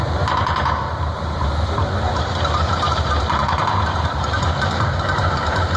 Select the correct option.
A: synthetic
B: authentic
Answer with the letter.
A